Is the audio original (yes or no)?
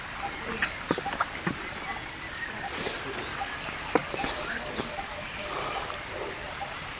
yes